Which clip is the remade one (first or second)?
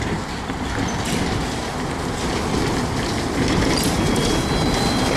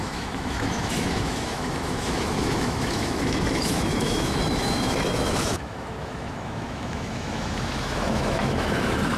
second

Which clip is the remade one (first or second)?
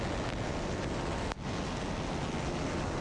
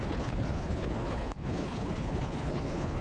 second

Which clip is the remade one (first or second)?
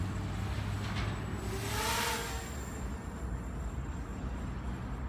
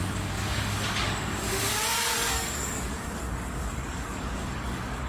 second